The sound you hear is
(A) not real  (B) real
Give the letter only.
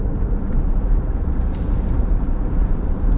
A